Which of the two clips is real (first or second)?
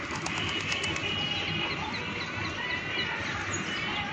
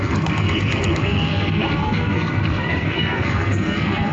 first